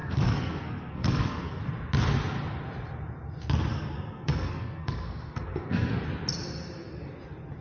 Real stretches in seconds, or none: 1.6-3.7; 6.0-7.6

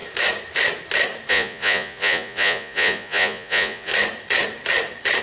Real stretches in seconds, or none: 0.0-1.3; 3.9-5.2

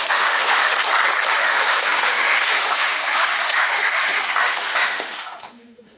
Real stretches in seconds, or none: 0.7-1.3

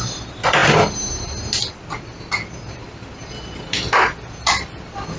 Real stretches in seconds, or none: 0.0-5.2